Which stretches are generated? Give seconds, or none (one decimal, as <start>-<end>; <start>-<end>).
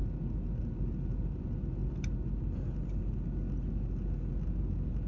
none